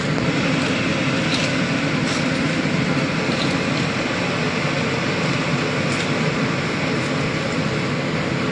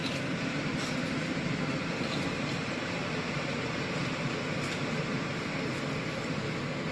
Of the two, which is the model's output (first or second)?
second